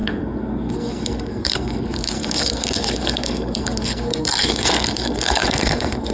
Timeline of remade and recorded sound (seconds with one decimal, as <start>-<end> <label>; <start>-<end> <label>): 0.0-6.1 remade